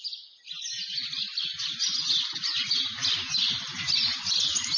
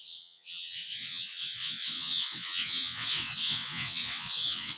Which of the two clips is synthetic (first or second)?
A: second